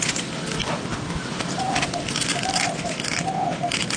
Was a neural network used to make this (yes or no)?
no